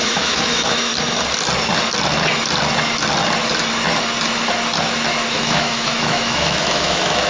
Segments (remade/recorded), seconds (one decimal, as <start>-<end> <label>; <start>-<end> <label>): 0.0-0.9 remade; 0.9-5.3 recorded; 5.3-7.3 remade